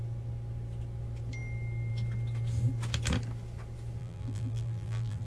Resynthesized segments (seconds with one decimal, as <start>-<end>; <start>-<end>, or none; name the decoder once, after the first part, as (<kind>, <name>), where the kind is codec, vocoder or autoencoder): 4.0-5.3 (vocoder, BigVGAN v2)